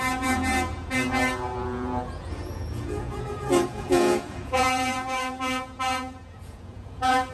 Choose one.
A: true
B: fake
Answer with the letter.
B